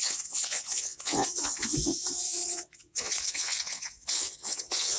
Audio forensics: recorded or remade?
remade